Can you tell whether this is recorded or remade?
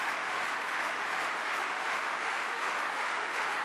remade